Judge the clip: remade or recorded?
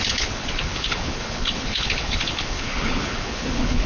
remade